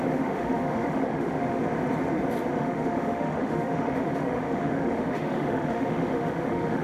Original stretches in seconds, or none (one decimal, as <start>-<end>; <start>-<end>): 1.6-2.6